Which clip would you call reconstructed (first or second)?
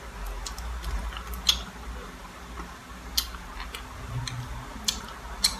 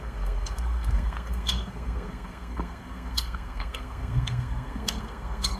second